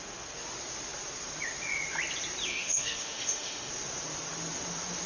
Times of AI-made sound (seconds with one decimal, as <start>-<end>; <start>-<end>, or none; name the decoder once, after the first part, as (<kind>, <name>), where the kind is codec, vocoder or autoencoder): 2.5-3.7 (autoencoder, DAC-VAE)